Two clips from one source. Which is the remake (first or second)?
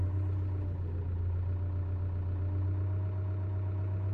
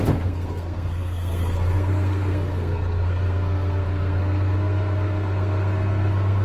second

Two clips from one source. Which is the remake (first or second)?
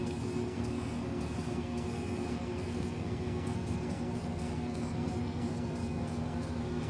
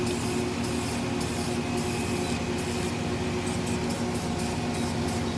first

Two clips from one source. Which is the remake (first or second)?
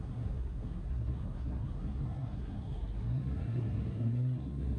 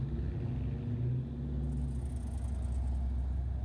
first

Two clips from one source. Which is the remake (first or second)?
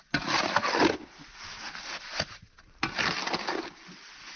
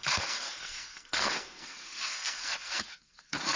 second